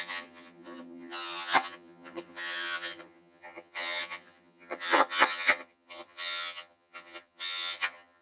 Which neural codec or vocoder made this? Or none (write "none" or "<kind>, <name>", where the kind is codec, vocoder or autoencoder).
vocoder, HiFi-GAN